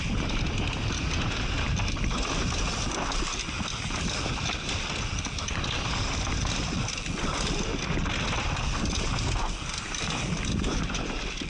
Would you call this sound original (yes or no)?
yes